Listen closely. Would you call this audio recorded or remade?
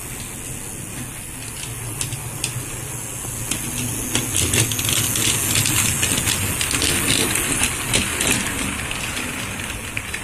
recorded